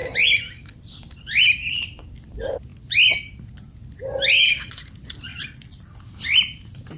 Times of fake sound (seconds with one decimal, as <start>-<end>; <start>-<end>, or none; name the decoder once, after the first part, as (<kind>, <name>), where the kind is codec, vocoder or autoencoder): 0.0-2.3 (vocoder, BigVGAN v2); 5.3-6.1